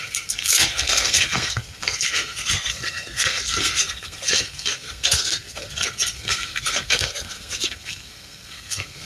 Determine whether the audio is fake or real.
fake